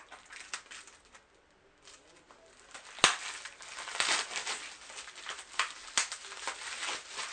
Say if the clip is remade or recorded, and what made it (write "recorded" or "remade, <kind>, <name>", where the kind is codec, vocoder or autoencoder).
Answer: recorded